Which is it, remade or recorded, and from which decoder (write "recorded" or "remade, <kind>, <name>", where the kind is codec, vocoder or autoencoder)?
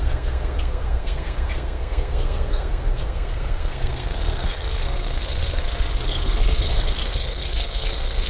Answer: remade, codec, SNAC